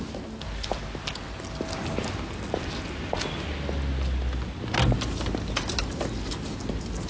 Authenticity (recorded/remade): recorded